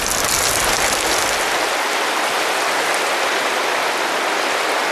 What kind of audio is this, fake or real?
real